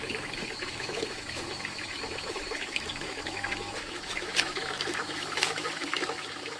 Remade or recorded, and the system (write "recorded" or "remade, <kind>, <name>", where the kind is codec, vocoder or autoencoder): remade, autoencoder, DAC-VAE